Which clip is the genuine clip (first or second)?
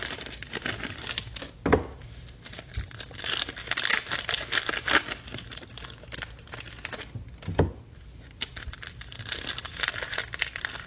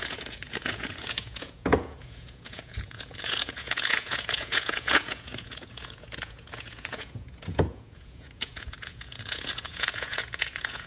first